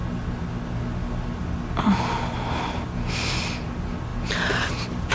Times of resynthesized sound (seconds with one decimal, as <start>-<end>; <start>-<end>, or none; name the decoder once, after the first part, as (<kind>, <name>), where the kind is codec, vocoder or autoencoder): none